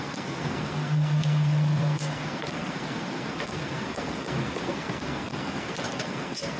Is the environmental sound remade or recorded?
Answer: remade